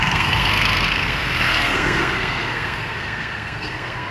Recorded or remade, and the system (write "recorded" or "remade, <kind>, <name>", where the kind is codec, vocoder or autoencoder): remade, codec, SNAC